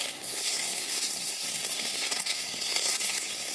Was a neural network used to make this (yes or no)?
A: yes